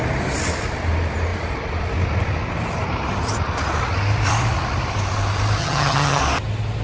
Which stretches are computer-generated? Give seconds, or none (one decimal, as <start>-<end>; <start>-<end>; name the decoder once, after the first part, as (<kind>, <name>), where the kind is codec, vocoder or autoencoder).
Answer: 5.6-6.2 (vocoder, HiFi-GAN)